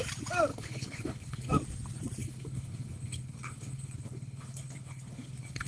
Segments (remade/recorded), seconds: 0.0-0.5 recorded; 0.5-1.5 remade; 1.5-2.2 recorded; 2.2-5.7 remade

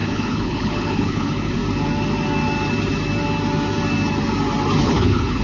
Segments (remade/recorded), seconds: 0.0-1.6 remade; 1.6-4.8 recorded; 4.8-5.4 remade

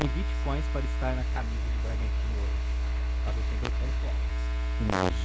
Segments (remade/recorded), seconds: 0.0-1.2 recorded; 1.2-4.3 remade; 4.3-5.2 recorded

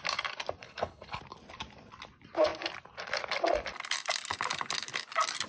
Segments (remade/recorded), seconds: 0.0-0.6 recorded; 0.6-1.2 remade; 1.2-5.5 recorded

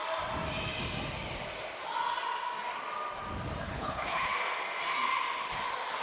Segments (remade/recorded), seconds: 0.0-3.6 recorded; 3.6-4.3 remade; 4.3-6.0 recorded

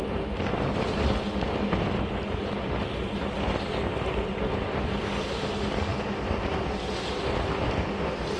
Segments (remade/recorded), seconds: 0.0-8.4 recorded

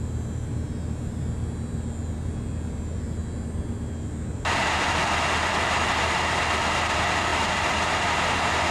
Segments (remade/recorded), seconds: 0.0-8.7 recorded

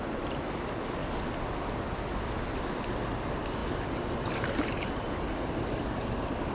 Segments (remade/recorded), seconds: 0.0-6.5 recorded